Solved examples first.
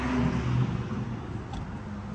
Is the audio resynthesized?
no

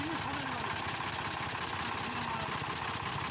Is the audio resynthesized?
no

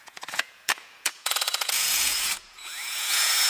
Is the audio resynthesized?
yes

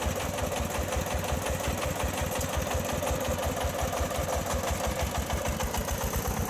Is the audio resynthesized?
no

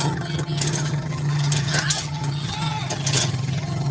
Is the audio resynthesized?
yes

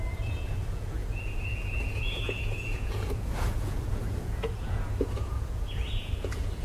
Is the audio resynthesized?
yes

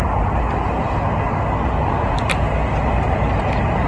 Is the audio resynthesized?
no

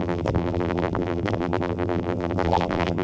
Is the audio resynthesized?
yes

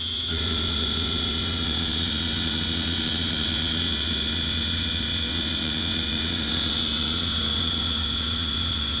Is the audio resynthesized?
yes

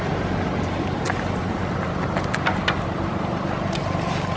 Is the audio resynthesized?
no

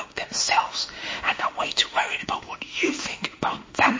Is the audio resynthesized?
yes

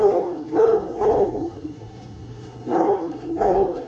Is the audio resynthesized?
yes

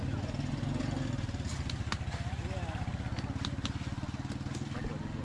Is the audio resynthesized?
no